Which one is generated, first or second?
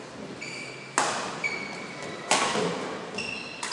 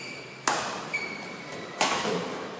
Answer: second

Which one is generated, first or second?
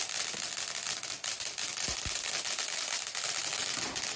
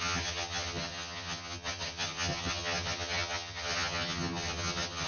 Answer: second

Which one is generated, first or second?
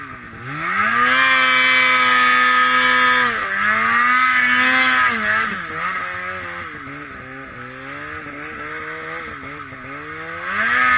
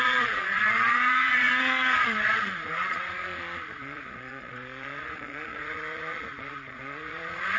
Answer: second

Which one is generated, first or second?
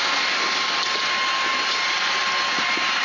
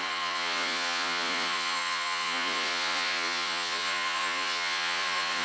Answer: second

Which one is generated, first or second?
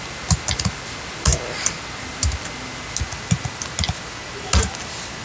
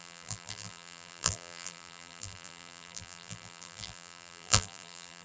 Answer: second